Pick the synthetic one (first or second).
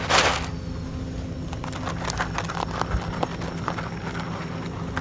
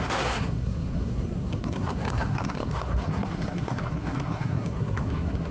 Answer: second